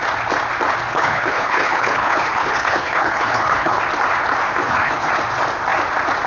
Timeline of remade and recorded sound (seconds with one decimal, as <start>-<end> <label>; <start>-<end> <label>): 0.0-0.9 recorded; 0.9-3.8 remade; 3.8-4.6 recorded; 4.6-5.1 remade; 5.1-6.3 recorded